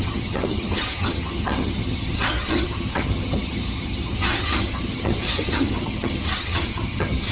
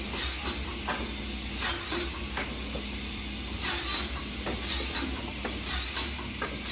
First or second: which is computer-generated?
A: first